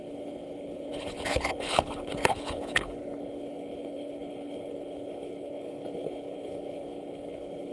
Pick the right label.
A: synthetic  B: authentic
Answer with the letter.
A